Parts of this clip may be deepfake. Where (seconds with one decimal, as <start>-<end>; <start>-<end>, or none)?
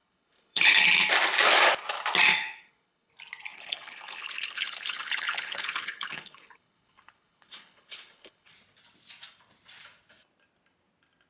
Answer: 0.0-0.8; 2.3-3.1; 3.5-8.5